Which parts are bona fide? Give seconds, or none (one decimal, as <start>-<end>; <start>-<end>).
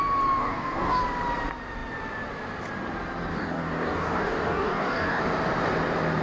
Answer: 0.0-0.4; 1.0-3.3; 5.2-6.2